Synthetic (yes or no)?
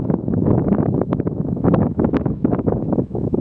yes